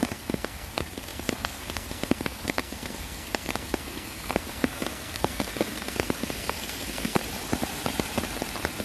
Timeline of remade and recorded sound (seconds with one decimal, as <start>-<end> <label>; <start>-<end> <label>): 0.0-7.2 remade; 7.2-8.8 recorded